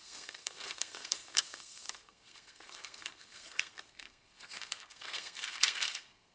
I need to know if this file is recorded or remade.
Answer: remade